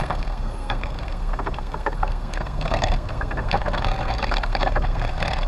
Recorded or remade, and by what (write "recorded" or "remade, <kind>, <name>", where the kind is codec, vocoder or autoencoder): remade, codec, SNAC